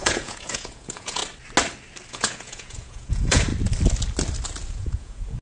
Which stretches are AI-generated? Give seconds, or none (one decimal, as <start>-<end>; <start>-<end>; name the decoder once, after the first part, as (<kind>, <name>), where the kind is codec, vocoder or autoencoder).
0.0-1.2 (vocoder, Vocos); 2.1-3.5; 4.7-5.4